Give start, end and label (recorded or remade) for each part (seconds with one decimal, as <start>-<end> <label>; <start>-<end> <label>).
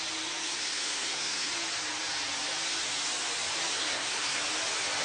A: 0.0-0.4 recorded; 0.4-1.5 remade; 1.5-3.7 recorded; 3.7-4.4 remade; 4.4-5.0 recorded